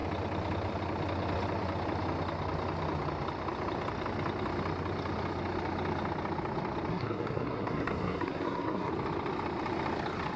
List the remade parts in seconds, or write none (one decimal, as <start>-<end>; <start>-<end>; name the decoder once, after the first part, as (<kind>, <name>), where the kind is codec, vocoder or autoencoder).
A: 6.9-8.9 (codec, SNAC)

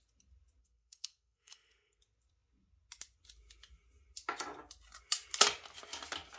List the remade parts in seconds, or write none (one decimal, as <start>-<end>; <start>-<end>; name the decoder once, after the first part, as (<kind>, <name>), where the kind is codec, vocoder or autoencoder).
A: 0.6-2.0 (codec, SNAC)

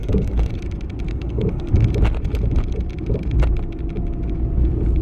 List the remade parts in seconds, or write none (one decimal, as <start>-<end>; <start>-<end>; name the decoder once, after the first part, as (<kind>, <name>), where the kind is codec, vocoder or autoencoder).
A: 0.0-0.6 (codec, SNAC); 1.1-1.7